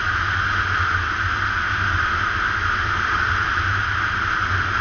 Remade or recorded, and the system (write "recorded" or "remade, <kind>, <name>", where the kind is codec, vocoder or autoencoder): recorded